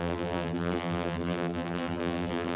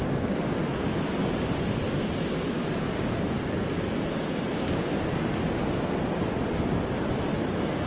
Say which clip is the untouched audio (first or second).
second